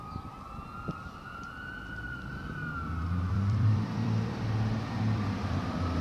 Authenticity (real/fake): fake